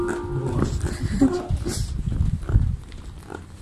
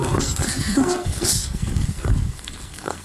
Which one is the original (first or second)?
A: first